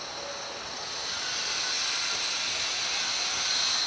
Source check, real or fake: real